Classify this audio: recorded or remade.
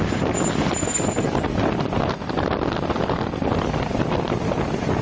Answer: recorded